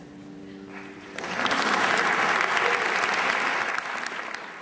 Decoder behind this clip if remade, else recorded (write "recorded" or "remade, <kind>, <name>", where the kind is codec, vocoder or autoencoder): recorded